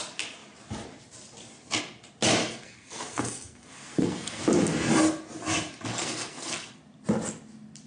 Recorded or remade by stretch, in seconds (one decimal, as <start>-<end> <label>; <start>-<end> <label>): 0.0-2.4 recorded; 2.4-4.4 remade; 4.4-5.9 recorded; 5.9-6.8 remade; 6.8-7.9 recorded